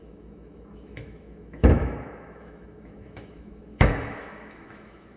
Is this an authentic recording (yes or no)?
no